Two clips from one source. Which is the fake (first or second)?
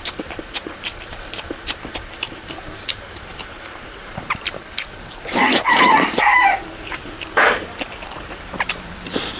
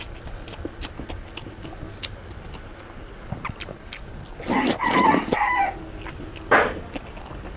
first